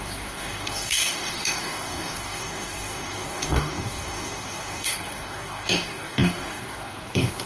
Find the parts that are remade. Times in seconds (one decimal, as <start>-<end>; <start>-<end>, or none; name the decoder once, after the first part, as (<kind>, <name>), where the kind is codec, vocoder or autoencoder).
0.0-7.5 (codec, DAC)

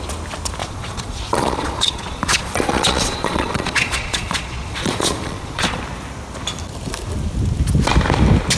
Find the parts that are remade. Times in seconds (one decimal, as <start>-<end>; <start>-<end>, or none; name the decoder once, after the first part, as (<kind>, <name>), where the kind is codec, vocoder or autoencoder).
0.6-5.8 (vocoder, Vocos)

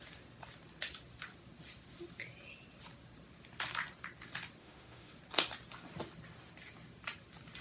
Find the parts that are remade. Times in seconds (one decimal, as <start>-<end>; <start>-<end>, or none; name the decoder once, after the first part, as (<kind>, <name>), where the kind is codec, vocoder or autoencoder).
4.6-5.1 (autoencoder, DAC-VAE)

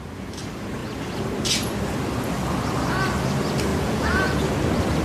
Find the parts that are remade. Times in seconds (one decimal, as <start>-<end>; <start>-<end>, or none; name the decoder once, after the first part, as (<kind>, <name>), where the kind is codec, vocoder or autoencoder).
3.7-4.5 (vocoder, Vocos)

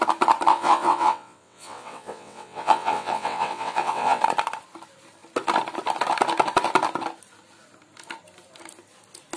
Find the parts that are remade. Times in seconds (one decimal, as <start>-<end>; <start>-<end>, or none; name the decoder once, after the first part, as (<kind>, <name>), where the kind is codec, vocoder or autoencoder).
0.5-4.2 (vocoder, WaveNeXt)